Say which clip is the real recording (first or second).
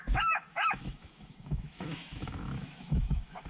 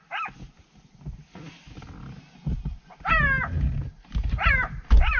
second